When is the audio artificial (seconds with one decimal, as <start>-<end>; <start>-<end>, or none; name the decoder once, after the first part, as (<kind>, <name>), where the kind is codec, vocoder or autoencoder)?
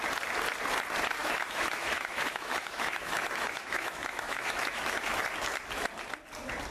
1.2-5.2 (autoencoder, DAC-VAE)